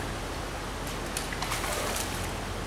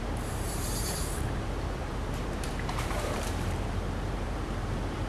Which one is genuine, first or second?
first